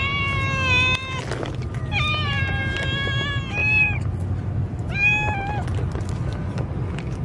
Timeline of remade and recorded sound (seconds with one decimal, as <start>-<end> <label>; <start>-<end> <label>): 0.0-3.6 recorded; 3.6-5.1 remade; 5.1-7.2 recorded